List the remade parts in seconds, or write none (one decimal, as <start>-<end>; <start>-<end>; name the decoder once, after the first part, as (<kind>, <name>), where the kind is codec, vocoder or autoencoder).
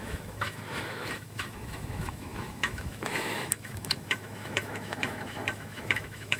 0.0-6.4 (autoencoder, DAC-VAE)